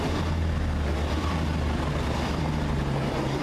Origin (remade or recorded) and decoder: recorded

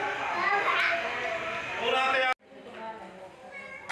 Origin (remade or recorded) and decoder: recorded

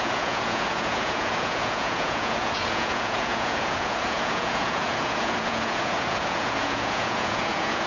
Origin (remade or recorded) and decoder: remade, vocoder, Vocos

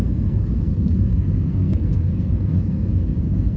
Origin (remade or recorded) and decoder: remade, codec, SNAC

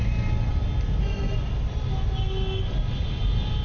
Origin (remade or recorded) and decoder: recorded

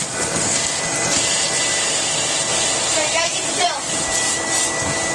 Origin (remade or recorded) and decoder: recorded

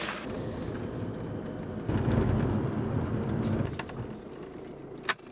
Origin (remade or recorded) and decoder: recorded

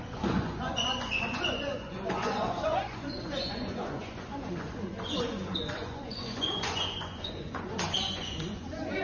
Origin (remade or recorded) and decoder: remade, vocoder, Vocos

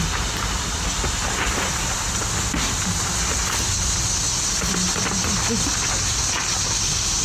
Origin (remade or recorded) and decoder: recorded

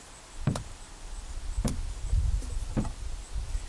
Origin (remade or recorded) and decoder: recorded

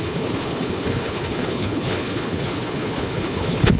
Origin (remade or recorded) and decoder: remade, codec, HILCodec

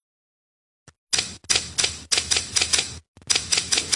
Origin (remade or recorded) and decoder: recorded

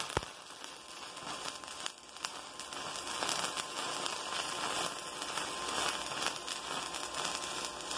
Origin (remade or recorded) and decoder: recorded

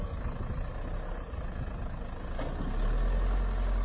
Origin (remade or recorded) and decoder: recorded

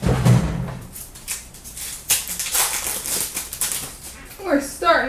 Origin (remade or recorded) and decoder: recorded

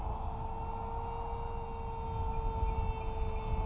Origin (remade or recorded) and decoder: recorded